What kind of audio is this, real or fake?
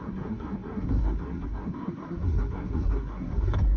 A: fake